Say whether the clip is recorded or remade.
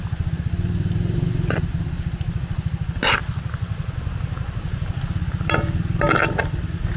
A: recorded